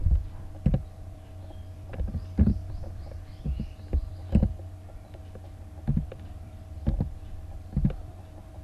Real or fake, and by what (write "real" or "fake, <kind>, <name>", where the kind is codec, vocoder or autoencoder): fake, vocoder, BigVGAN v2